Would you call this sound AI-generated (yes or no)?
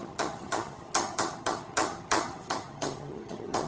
yes